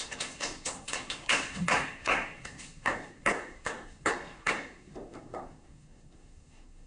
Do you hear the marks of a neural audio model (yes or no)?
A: yes